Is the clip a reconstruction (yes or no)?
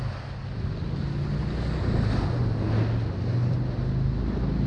no